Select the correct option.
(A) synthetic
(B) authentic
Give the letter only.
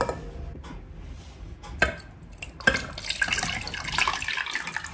B